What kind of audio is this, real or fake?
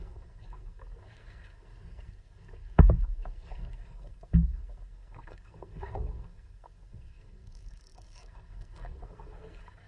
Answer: fake